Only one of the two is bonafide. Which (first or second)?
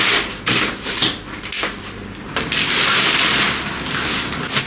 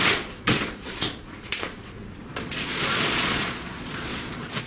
first